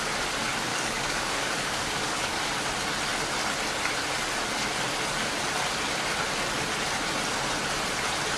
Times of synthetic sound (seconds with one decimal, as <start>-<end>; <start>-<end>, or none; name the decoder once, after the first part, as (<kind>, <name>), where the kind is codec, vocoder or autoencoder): 0.7-2.6 (codec, DAC)